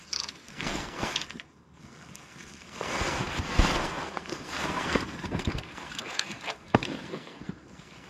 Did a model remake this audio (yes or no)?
yes